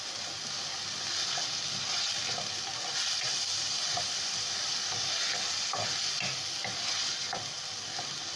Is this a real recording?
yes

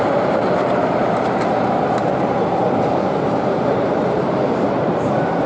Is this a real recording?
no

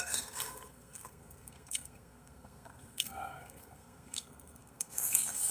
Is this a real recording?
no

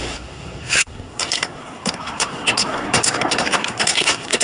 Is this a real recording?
no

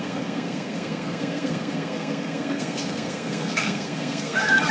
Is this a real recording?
no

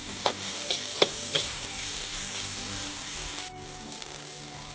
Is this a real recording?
no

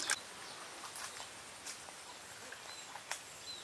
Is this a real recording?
yes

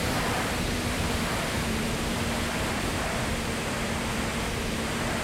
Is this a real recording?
no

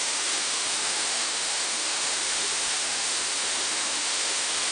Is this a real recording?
no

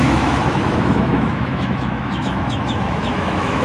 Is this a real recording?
no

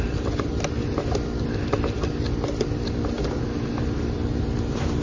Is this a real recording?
yes